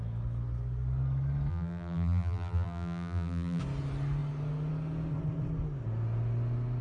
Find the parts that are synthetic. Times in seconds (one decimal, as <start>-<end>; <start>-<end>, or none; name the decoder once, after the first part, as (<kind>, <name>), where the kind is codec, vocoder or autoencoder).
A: 1.5-3.6 (vocoder, BigVGAN v2)